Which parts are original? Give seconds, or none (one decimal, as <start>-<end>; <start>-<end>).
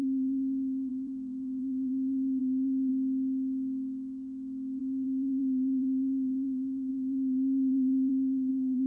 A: 2.9-4.8